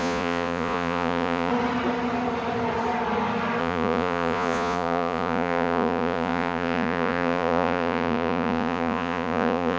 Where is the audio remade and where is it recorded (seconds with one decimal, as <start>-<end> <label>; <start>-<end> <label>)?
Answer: 0.0-1.5 remade; 1.5-3.6 recorded; 3.6-9.8 remade